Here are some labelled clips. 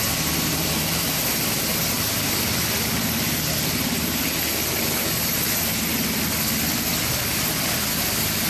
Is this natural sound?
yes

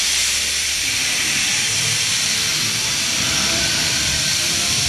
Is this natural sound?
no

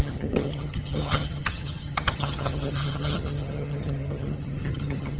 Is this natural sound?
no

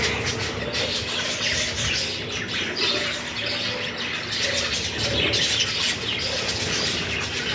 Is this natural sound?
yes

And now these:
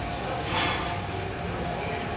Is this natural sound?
yes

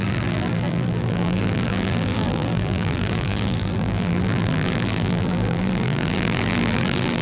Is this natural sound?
no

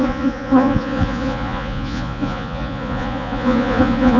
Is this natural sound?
no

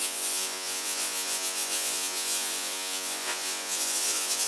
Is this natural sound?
no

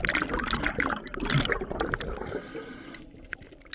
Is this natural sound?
yes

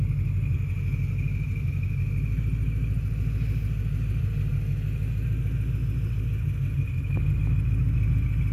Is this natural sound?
yes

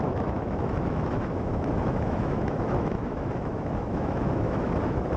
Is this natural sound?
no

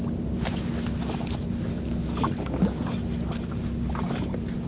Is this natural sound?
yes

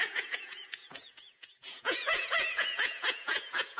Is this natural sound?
no